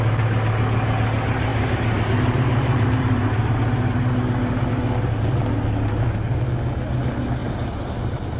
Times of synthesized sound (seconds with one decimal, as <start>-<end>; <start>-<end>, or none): 1.5-4.0; 7.4-8.4